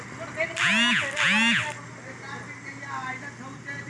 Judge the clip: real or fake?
real